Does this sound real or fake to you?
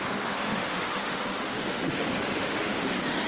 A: fake